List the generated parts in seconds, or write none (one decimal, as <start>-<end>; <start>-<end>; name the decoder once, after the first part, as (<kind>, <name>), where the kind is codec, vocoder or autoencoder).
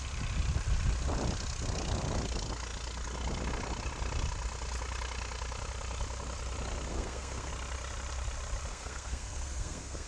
6.9-7.5 (codec, SNAC); 8.7-10.1